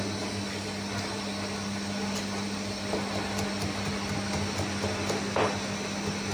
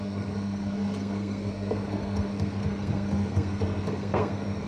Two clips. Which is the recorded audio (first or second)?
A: first